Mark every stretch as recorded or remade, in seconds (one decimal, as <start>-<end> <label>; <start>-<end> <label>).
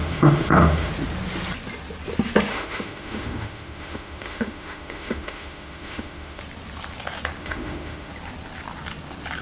0.0-0.9 remade; 0.9-2.5 recorded; 2.5-6.4 remade; 6.4-7.4 recorded; 7.4-8.1 remade; 8.1-9.4 recorded